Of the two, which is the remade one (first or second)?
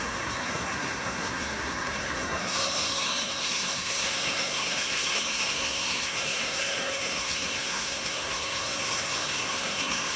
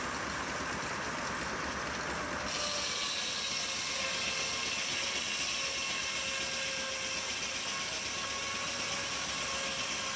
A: first